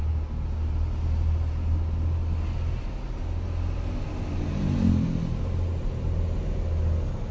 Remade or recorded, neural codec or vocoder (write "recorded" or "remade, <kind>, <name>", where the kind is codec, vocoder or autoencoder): recorded